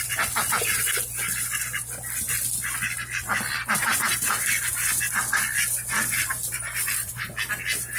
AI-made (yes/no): no